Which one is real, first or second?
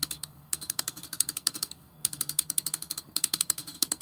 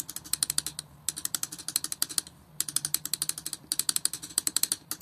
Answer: second